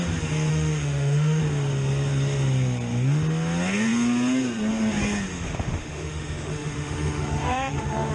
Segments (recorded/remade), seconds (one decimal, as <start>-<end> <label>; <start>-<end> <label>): 0.0-0.5 recorded; 0.5-1.4 remade; 1.4-5.3 recorded; 5.3-8.1 remade